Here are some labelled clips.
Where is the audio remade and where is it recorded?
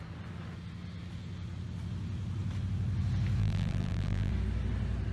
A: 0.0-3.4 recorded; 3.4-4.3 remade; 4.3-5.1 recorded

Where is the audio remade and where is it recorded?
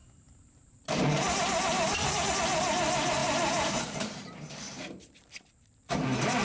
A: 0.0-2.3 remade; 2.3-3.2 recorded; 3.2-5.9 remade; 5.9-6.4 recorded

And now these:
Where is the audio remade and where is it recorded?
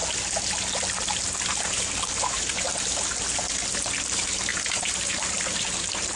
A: 0.0-1.1 recorded; 1.1-2.7 remade; 2.7-4.0 recorded; 4.0-6.2 remade